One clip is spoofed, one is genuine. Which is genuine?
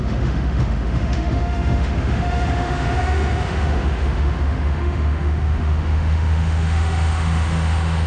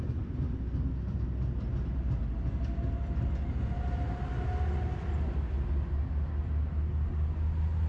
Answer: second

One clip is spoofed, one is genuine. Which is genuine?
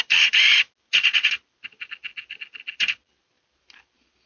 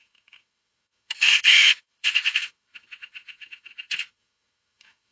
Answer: first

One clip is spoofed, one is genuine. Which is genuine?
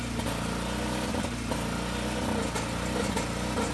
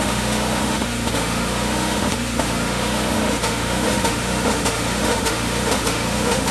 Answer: first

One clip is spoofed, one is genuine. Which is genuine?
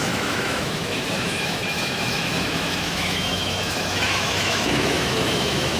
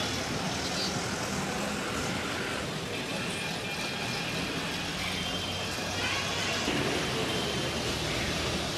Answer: second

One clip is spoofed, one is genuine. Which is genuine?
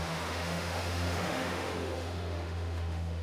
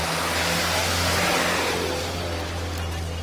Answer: second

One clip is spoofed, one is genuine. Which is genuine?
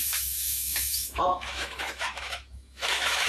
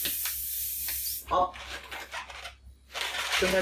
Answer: second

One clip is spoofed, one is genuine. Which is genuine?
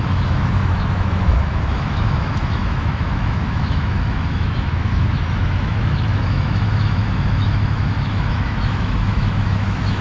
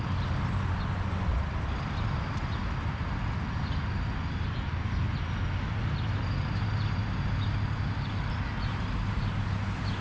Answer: second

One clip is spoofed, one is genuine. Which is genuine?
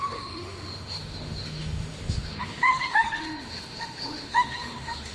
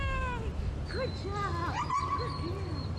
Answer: second